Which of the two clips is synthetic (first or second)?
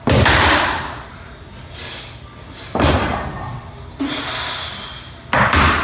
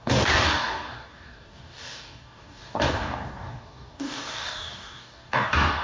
second